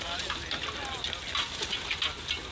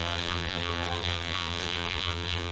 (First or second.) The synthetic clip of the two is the second